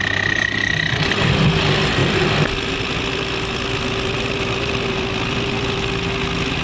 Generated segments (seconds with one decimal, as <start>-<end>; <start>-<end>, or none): 2.0-5.8